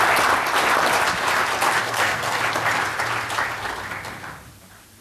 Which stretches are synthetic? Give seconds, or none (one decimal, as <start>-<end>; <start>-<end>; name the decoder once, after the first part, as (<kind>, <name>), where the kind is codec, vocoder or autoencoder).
1.8-2.4 (codec, SNAC)